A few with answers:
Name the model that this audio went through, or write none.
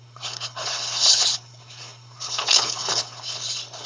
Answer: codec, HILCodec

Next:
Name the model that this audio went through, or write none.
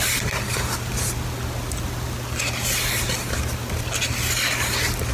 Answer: none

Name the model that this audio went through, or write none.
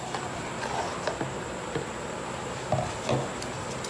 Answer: none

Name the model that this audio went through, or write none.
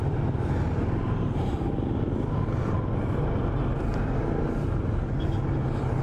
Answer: none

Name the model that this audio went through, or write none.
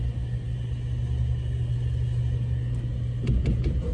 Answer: none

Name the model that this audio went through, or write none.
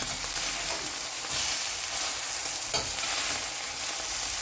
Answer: none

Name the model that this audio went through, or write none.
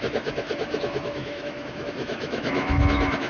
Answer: autoencoder, DAC-VAE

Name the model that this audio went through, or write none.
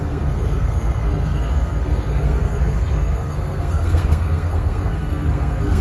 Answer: codec, SNAC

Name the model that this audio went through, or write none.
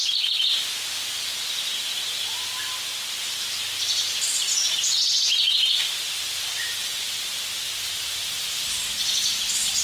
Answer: none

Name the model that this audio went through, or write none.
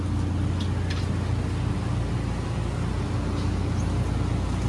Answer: none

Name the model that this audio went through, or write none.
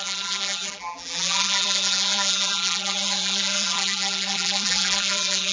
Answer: vocoder, BigVGAN v2